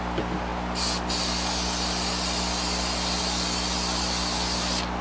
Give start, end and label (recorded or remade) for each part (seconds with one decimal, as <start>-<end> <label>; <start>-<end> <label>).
0.0-5.0 recorded